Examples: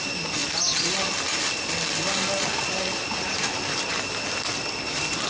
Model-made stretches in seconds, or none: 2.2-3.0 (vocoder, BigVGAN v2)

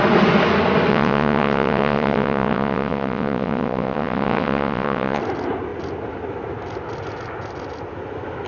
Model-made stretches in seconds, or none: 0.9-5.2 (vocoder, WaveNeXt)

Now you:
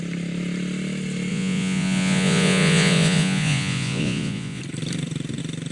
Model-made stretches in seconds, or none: 1.3-4.6 (vocoder, Vocos)

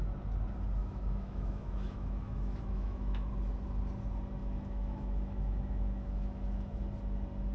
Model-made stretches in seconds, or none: 0.8-3.3 (autoencoder, DAC-VAE); 4.4-6.8

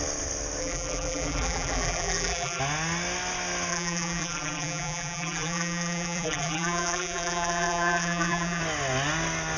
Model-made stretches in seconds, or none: 0.6-2.6 (vocoder, BigVGAN v2); 3.7-8.6